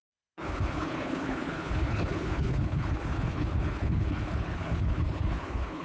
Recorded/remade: remade